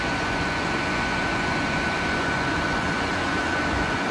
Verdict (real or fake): fake